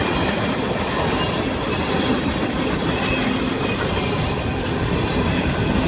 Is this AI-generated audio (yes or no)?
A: no